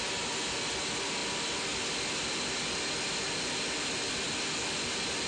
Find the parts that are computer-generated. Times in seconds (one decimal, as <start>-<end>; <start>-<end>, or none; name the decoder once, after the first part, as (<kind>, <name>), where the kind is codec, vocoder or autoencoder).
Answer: none